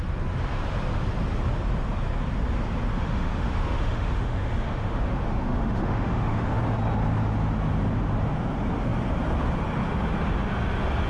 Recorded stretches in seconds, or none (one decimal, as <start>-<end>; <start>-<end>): 0.0-2.9; 6.6-11.1